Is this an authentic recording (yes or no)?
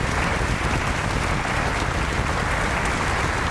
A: yes